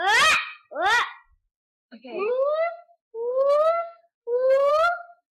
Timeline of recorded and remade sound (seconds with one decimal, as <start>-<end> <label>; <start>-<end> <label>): 0.0-1.7 recorded; 1.7-2.3 remade; 2.3-3.0 recorded; 3.0-4.7 remade; 4.7-5.3 recorded

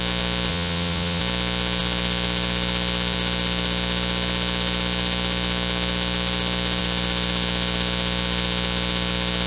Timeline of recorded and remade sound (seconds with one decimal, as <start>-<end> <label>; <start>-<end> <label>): 0.0-0.5 recorded; 0.5-1.2 remade; 1.2-9.5 recorded